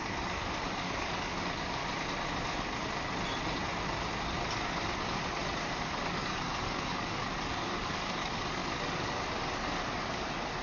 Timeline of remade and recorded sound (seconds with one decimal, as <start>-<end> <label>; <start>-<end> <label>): 0.0-1.8 remade; 1.8-5.8 recorded; 5.8-8.6 remade; 8.6-9.9 recorded; 9.9-10.6 remade